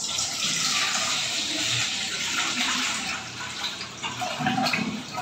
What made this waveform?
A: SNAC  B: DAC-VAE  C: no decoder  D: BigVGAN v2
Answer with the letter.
D